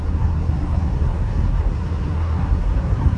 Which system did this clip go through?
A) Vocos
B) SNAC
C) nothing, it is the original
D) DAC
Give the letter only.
B